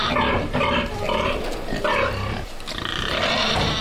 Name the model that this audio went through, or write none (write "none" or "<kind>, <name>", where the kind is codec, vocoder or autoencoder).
vocoder, BigVGAN v2